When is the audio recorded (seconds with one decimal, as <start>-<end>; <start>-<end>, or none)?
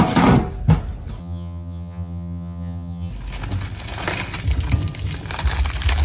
0.0-1.2; 3.1-6.0